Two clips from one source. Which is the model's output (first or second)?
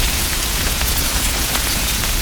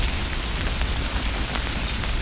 first